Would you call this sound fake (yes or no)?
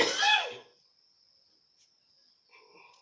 no